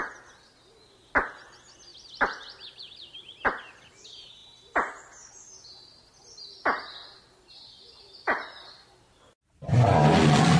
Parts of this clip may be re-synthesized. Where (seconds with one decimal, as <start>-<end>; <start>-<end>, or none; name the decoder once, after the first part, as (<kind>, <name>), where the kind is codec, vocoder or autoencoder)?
1.9-3.9 (vocoder, BigVGAN v2)